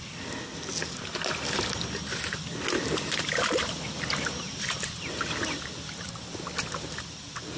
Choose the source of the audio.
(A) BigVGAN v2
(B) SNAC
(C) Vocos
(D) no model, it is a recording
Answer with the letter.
D